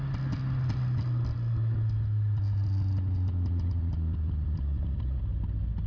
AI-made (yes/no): no